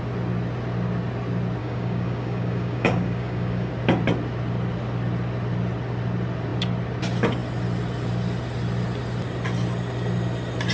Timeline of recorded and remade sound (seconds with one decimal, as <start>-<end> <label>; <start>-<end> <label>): 0.0-1.6 recorded; 1.6-3.7 remade; 3.7-10.7 recorded